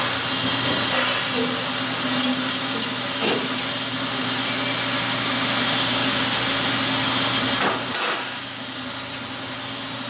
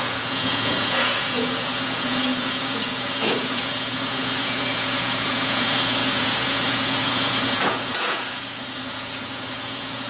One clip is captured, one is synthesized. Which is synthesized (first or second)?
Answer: second